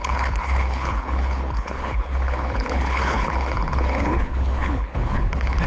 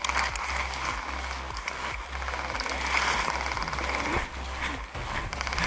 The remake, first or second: first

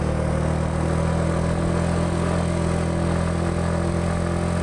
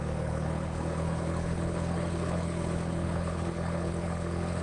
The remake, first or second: second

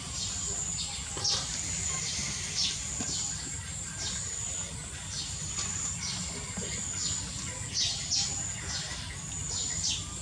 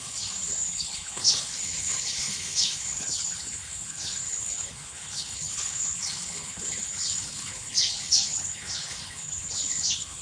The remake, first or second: second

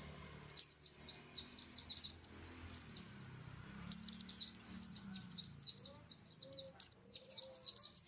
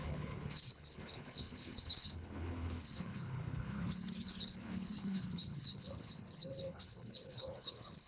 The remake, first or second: second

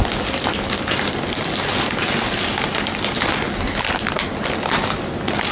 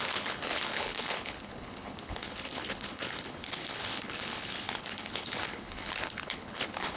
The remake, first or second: second